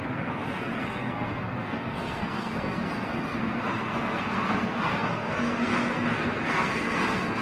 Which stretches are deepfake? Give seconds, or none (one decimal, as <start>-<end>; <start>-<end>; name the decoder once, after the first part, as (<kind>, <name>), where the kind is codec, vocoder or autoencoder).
0.0-7.4 (codec, SNAC)